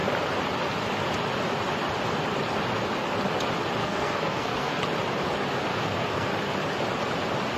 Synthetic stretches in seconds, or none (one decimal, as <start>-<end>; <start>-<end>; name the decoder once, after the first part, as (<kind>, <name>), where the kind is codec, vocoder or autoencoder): 3.8-4.8 (codec, SNAC); 5.7-6.3